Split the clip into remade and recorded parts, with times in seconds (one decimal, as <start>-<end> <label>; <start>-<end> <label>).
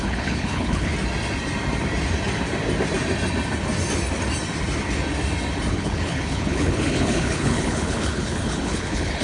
0.0-0.9 remade; 0.9-5.7 recorded; 5.7-9.2 remade